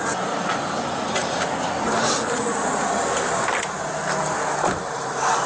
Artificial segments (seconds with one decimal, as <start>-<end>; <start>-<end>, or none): none